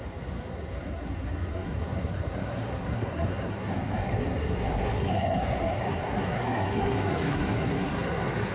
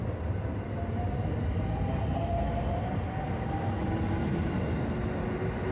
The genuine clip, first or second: second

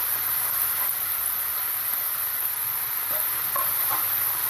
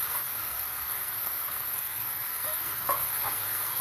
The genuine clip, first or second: first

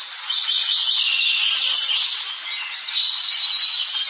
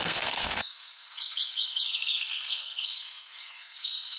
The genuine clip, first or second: first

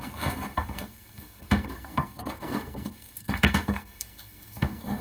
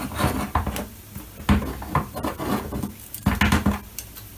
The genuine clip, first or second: second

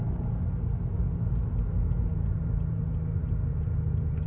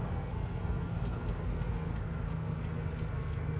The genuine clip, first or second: first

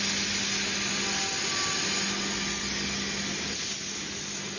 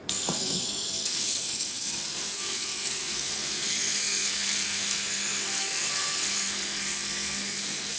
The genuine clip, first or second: first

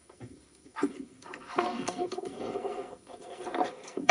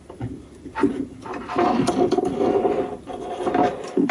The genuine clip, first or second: second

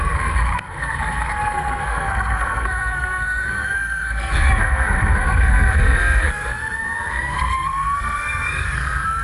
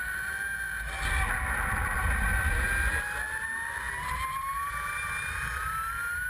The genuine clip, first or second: second